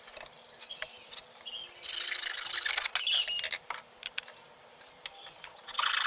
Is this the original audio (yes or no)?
yes